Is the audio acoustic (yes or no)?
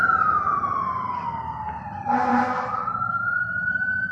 yes